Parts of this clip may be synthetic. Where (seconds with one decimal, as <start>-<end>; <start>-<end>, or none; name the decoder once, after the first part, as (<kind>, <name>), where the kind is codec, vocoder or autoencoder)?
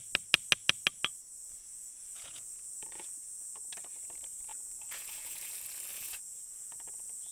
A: 1.4-3.6 (vocoder, Vocos); 4.5-5.5; 5.9-7.3